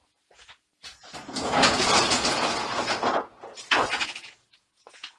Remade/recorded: remade